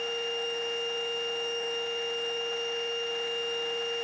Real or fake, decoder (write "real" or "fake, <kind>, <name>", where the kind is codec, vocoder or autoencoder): fake, autoencoder, DAC-VAE